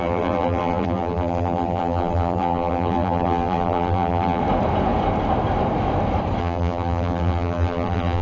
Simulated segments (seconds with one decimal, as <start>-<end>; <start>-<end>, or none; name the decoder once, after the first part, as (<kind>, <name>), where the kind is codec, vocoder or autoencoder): 0.0-4.4 (vocoder, BigVGAN v2); 6.4-8.2